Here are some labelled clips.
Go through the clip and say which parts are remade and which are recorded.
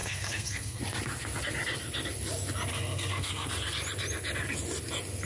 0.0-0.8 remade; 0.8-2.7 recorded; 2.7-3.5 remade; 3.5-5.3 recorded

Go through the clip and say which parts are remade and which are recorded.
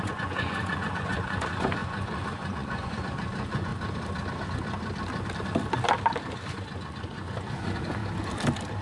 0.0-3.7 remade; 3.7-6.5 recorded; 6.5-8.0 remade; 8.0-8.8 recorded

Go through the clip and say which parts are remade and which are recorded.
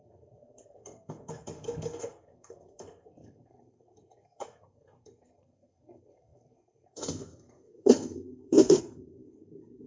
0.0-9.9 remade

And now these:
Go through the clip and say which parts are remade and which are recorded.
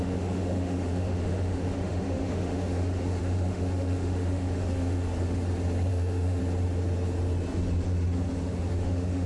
0.0-5.1 remade; 5.1-5.9 recorded; 5.9-6.4 remade; 6.4-8.7 recorded; 8.7-9.3 remade